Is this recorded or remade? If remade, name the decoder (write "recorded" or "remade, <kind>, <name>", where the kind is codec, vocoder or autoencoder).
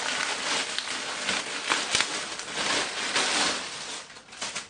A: recorded